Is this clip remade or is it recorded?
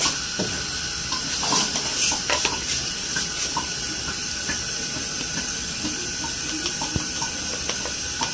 recorded